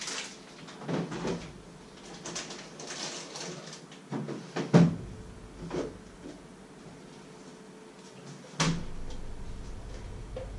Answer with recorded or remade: recorded